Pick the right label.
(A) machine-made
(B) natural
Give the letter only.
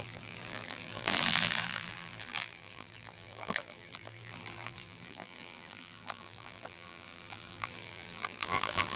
A